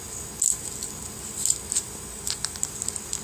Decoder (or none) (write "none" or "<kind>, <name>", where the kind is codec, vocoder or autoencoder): none